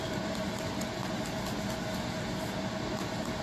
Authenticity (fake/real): real